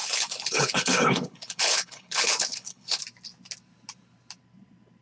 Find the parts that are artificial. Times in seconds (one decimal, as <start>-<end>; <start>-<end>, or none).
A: 0.0-3.0